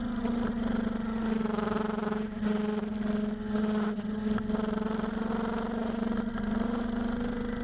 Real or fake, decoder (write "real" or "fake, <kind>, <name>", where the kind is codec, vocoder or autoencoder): real